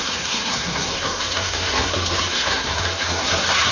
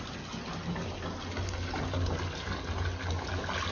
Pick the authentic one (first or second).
second